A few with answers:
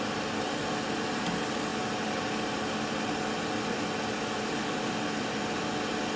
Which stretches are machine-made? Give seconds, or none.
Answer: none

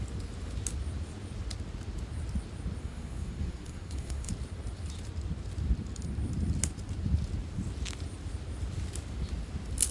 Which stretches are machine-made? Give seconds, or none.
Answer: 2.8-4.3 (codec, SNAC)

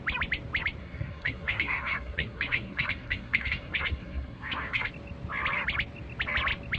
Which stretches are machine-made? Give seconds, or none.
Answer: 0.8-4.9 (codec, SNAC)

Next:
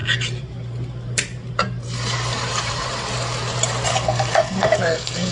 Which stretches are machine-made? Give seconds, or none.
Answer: 3.9-5.3 (codec, SNAC)